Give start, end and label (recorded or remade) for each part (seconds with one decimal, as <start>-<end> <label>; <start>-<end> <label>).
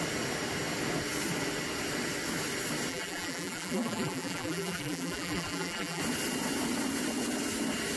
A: 0.0-2.9 recorded; 2.9-6.0 remade; 6.0-8.0 recorded